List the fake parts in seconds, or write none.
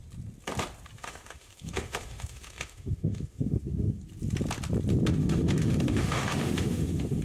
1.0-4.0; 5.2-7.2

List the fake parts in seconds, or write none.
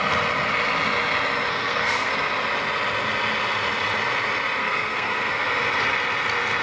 1.5-2.1; 4.6-5.5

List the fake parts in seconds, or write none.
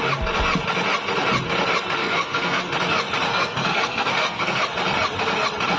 2.0-2.6; 3.3-4.6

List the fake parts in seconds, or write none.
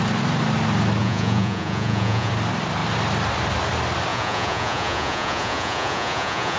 1.0-2.3; 4.1-6.6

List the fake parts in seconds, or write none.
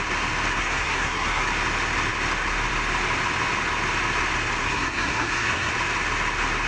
0.5-1.5; 4.6-5.7